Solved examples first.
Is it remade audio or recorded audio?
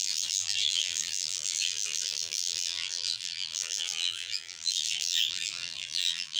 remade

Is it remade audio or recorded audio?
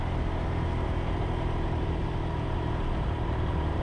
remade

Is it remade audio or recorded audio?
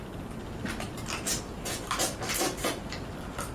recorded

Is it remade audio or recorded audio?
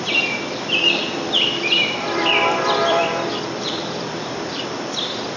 remade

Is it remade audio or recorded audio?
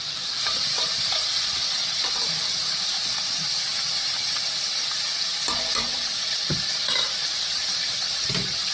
remade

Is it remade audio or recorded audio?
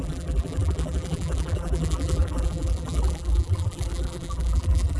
remade